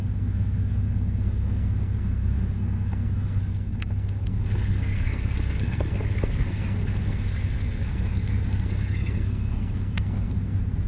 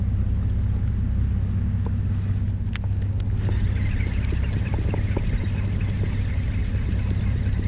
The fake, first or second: first